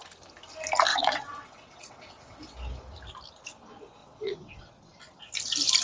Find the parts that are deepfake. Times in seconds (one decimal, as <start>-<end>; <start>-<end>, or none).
0.9-2.4; 4.0-4.7